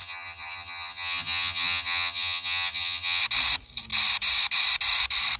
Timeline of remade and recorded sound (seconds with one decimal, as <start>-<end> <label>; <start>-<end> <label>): 0.0-3.2 remade; 3.2-5.4 recorded